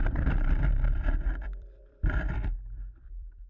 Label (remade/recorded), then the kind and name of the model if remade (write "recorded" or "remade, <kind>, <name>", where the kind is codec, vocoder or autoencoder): remade, vocoder, BigVGAN v2